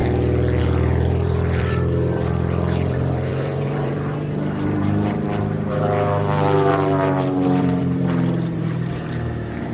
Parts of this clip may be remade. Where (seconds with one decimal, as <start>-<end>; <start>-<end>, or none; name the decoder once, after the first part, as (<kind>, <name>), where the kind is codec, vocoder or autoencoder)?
0.6-9.7 (vocoder, BigVGAN v2)